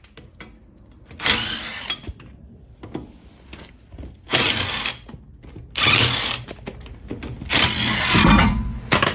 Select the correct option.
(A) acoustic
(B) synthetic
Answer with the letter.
A